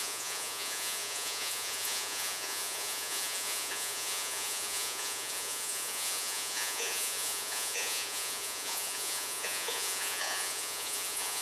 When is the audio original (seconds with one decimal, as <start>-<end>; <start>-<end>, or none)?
none